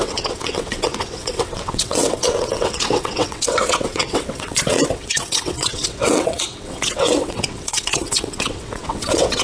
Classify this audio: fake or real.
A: fake